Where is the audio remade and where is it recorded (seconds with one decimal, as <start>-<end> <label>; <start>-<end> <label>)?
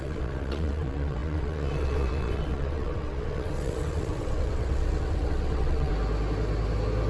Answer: 0.0-5.9 remade; 5.9-7.1 recorded